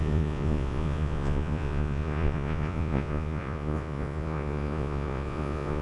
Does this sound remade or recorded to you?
remade